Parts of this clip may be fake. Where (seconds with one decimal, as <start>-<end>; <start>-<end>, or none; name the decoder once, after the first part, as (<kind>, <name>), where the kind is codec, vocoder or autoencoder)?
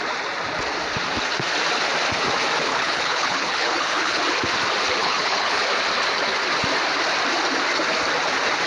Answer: 2.7-4.2 (codec, HILCodec); 5.0-5.6